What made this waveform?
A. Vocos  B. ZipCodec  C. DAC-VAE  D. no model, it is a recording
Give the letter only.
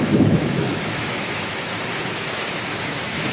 C